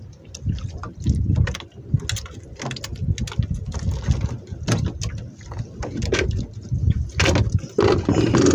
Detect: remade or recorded recorded